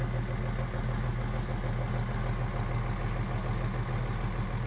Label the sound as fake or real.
real